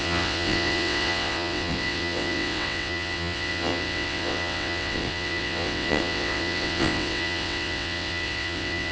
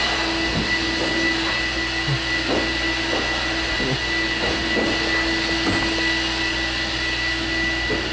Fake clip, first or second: first